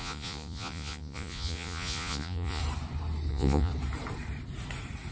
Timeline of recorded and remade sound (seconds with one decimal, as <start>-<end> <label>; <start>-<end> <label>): 0.0-2.6 remade; 2.6-3.3 recorded; 3.3-3.7 remade; 3.7-5.1 recorded